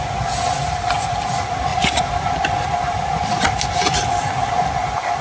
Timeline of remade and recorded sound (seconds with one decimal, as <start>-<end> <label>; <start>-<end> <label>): 0.0-1.7 recorded; 1.7-2.2 remade; 2.2-5.2 recorded